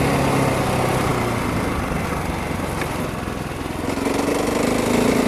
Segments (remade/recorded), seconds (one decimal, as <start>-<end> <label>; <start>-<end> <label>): 0.0-5.3 recorded